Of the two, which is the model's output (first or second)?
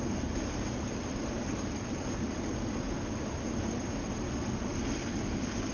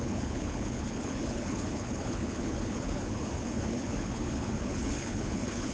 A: second